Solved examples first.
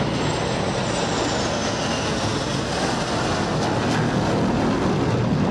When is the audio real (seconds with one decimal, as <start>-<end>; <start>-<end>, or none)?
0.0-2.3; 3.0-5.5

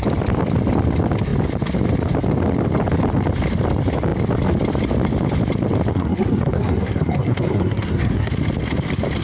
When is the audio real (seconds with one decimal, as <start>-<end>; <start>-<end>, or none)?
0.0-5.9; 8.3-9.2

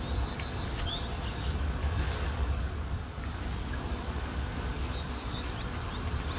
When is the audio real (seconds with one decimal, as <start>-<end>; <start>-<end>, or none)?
0.0-1.8; 5.5-6.4

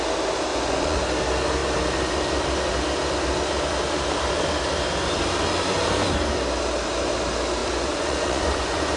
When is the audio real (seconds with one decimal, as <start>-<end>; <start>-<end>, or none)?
0.0-0.5; 1.0-7.6

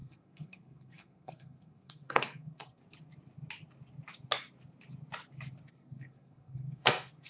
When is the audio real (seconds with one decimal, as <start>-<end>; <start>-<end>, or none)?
2.8-5.7

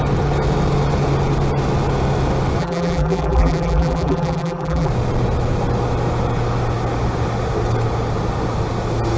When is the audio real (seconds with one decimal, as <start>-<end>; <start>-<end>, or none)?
0.0-2.6; 4.9-9.2

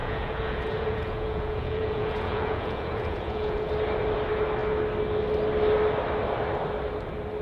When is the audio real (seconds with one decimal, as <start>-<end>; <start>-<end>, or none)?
3.7-7.4

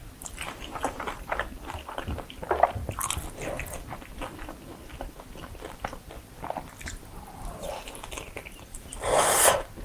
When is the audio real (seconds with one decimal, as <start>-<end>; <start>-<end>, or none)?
0.0-8.7; 9.4-9.8